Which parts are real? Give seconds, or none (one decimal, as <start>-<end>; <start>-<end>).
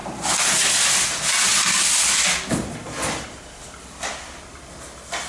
0.0-5.3